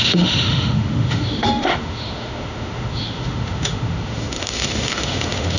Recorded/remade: remade